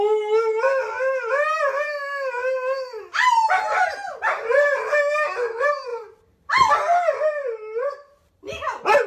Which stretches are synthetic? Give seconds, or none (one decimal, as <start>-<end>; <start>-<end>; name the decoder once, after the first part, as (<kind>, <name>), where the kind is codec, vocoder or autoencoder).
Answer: 5.9-6.7 (vocoder, BigVGAN v2); 7.4-8.4